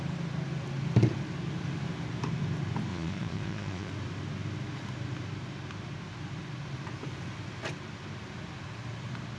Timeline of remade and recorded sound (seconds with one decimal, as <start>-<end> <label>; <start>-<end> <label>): 0.0-2.9 recorded; 2.9-3.9 remade; 3.9-9.4 recorded